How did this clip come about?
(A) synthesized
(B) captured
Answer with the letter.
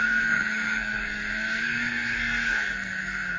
A